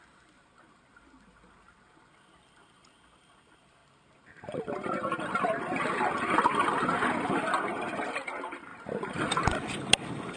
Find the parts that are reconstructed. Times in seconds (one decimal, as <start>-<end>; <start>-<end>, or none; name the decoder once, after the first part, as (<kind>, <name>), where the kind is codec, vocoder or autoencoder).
0.0-3.8 (vocoder, BigVGAN v2); 7.1-10.4